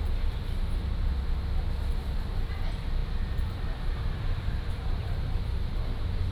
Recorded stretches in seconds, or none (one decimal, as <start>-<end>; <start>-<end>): 1.0-1.6